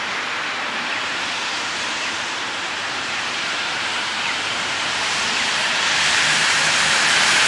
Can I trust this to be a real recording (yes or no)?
no